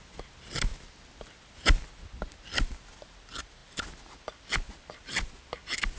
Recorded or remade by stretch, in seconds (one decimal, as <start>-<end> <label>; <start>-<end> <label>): 0.0-6.0 recorded